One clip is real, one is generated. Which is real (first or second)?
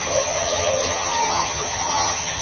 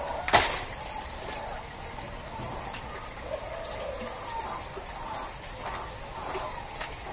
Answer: second